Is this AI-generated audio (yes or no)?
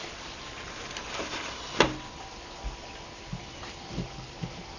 no